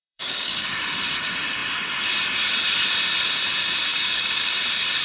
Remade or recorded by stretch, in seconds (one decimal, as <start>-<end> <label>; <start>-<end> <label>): 0.0-0.8 remade; 0.8-3.9 recorded; 3.9-4.5 remade; 4.5-5.0 recorded